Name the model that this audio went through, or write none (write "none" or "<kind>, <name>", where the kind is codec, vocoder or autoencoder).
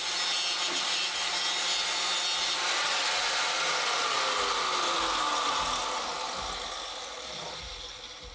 none